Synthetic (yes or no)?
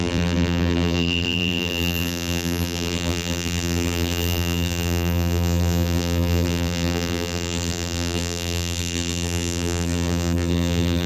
yes